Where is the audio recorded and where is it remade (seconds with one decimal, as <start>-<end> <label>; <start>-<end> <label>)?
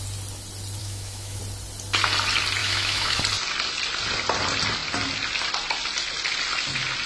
0.0-0.8 recorded; 0.8-1.4 remade; 1.4-2.6 recorded; 2.6-3.2 remade; 3.2-7.1 recorded